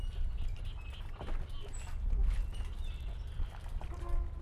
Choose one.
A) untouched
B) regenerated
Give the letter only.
A